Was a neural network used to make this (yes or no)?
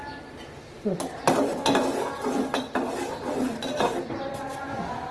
no